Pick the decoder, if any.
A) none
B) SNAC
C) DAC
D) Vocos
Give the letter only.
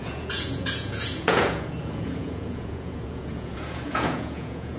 D